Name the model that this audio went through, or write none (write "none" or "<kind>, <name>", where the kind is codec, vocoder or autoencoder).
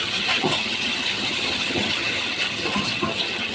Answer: vocoder, HiFi-GAN